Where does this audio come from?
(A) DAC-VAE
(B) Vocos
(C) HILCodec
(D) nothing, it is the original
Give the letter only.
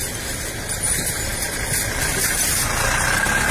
D